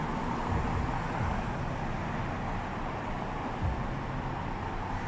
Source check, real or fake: real